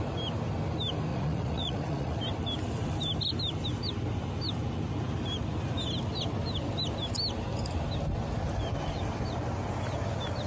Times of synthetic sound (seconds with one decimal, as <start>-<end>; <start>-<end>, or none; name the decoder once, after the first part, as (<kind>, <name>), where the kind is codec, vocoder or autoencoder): 1.1-2.2 (vocoder, Vocos)